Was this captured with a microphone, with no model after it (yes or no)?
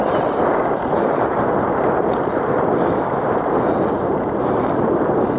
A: yes